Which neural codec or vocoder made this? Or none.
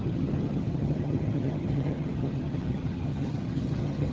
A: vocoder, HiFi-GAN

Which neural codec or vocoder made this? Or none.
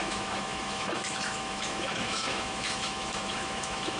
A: autoencoder, DAC-VAE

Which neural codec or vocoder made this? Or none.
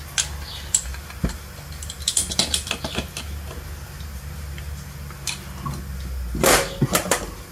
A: none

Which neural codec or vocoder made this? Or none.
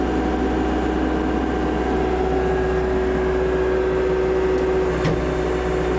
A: none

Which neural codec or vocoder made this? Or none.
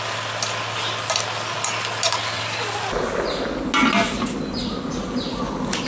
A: none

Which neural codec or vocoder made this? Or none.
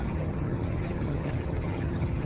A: vocoder, HiFi-GAN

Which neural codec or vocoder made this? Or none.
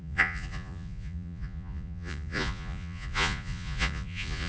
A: vocoder, Vocos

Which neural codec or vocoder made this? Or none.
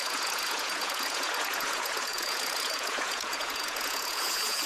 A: vocoder, Vocos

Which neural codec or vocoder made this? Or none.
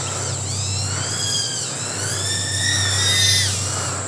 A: none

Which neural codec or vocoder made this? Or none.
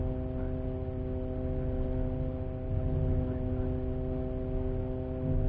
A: none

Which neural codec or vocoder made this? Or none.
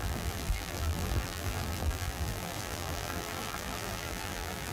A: vocoder, BigVGAN v2